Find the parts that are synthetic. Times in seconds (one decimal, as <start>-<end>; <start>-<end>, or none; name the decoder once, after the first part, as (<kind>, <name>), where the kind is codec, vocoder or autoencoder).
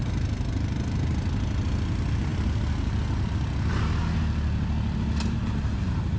none